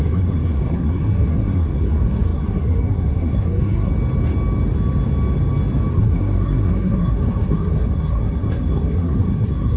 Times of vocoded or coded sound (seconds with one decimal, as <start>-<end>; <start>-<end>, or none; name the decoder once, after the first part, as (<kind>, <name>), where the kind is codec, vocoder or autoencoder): 0.0-3.9 (codec, SNAC); 5.9-9.8